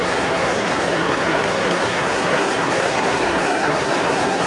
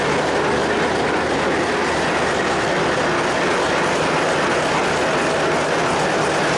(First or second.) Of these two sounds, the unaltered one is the second